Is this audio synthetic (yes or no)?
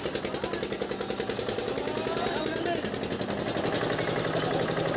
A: no